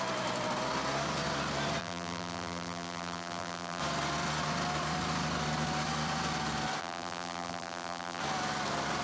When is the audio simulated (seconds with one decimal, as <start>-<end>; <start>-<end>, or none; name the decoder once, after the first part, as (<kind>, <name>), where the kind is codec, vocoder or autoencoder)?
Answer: 1.8-3.8 (vocoder, BigVGAN v2); 6.8-8.2